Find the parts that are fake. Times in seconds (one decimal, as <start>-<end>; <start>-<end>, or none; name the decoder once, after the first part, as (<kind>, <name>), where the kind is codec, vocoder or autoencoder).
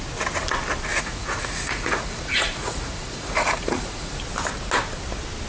0.9-4.2 (vocoder, Vocos)